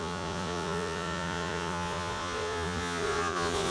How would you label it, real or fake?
fake